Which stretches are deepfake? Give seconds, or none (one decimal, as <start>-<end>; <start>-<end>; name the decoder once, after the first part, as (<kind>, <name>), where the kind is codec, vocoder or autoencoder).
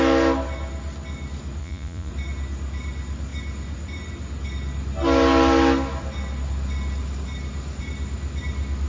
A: 1.6-2.1 (vocoder, Vocos)